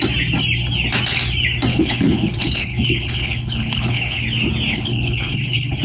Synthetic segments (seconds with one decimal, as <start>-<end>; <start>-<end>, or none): 1.7-4.2; 4.7-5.8